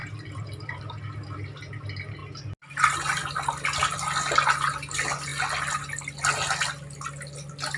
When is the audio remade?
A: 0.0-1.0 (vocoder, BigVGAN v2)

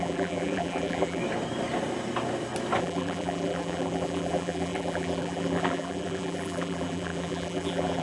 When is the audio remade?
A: 0.0-1.2 (vocoder, BigVGAN v2); 2.8-8.0

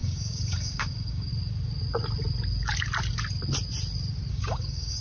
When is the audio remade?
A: 0.0-1.3 (codec, DAC); 4.3-5.0

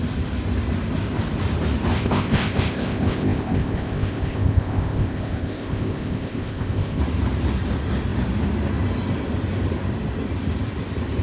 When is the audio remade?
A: 1.9-7.0 (codec, ZipCodec)

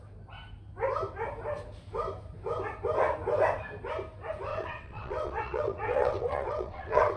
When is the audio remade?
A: 4.5-7.2 (vocoder, WaveNeXt)

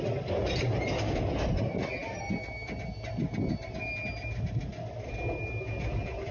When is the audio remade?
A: none

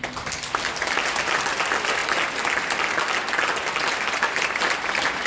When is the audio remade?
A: none